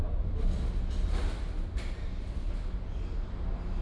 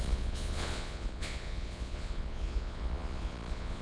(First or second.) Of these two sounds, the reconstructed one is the second